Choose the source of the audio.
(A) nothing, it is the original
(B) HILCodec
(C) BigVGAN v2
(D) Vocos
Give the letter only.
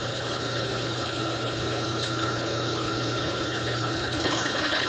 B